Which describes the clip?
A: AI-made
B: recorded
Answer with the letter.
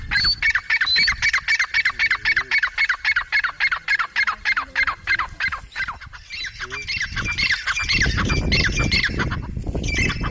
B